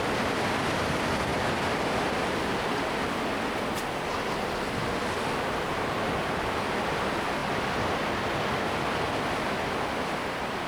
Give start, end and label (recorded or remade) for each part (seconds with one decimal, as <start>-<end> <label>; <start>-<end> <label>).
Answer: 0.0-1.3 recorded; 1.3-3.0 remade; 3.0-10.7 recorded